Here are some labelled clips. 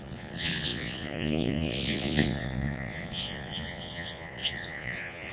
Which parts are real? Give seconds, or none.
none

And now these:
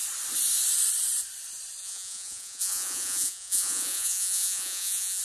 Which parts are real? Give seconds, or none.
0.0-1.8

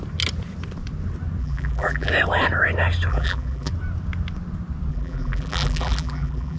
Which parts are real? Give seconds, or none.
0.0-1.4; 2.1-3.1; 3.7-4.9

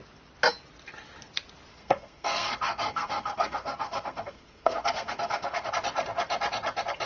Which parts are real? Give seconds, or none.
0.0-1.7; 5.7-7.1

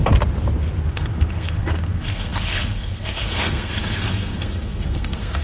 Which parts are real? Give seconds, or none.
0.0-0.9

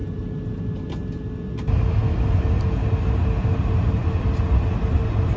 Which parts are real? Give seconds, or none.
0.0-5.4